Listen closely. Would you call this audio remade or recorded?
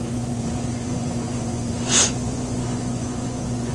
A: remade